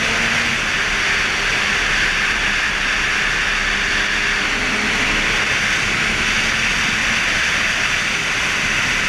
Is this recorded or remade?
recorded